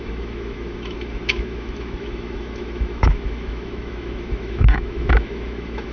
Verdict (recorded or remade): remade